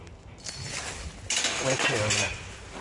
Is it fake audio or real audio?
real